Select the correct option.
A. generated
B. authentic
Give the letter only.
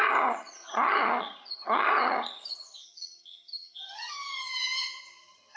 A